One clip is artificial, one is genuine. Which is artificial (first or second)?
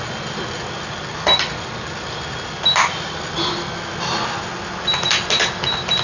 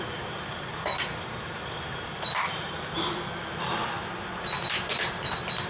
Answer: second